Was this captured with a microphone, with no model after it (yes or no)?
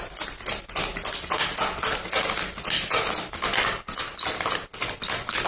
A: yes